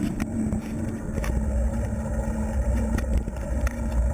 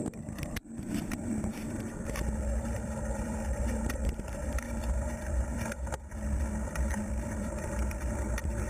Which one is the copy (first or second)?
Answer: second